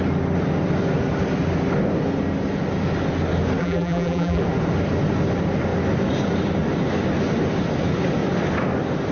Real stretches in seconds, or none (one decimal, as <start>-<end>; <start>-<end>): 0.0-3.6; 4.4-9.1